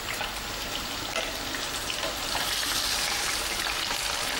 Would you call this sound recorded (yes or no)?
yes